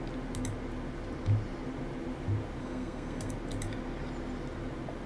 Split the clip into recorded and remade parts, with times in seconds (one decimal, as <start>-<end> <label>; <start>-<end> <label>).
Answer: 0.0-2.6 recorded; 2.6-3.3 remade; 3.3-5.1 recorded